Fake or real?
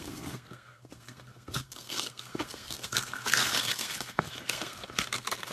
fake